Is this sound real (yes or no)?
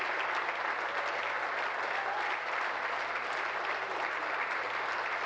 yes